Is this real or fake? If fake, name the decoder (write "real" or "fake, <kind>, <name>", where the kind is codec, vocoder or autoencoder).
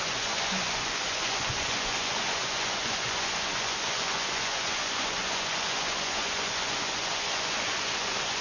fake, vocoder, Vocos